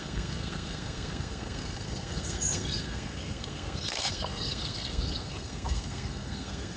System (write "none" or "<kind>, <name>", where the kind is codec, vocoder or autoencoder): codec, SNAC